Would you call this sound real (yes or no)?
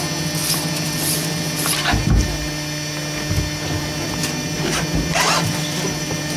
yes